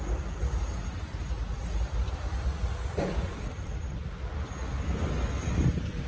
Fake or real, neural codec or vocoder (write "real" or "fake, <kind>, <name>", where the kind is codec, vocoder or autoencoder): real